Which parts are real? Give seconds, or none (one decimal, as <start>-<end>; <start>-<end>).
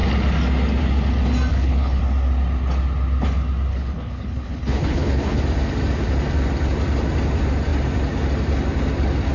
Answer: 0.0-1.5; 2.0-3.7; 5.4-9.3